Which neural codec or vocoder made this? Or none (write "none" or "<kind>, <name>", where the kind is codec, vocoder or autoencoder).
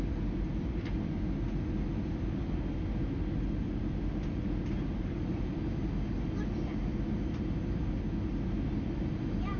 none